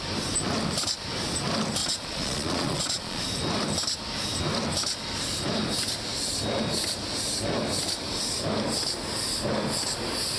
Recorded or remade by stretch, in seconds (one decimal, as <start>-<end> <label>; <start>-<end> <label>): 0.0-1.8 recorded; 1.8-3.2 remade; 3.2-10.4 recorded